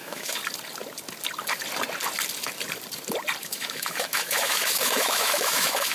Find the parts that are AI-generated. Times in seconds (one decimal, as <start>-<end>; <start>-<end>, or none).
0.0-0.4; 3.4-5.9